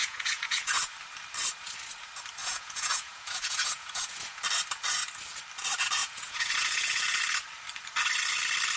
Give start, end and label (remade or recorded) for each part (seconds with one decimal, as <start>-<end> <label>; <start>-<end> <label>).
0.0-0.9 remade; 0.9-2.4 recorded; 2.4-4.4 remade; 4.4-6.0 recorded; 6.0-7.2 remade; 7.2-8.8 recorded